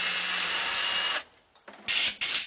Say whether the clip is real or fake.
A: real